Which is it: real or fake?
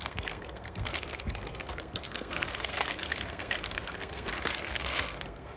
fake